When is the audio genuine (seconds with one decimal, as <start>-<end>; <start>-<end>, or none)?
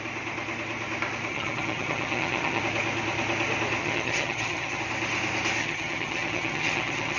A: 0.0-1.3; 2.6-3.8; 4.8-5.6